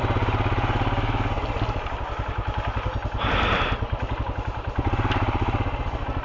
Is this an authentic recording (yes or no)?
yes